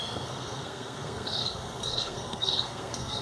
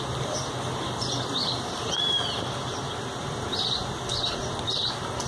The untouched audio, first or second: second